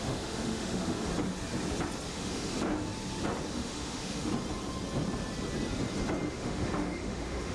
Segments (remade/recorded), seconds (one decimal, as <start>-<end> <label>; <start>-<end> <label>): 0.0-1.1 remade; 1.1-2.1 recorded; 2.1-2.5 remade; 2.5-3.5 recorded; 3.5-4.3 remade; 4.3-6.3 recorded; 6.3-7.5 remade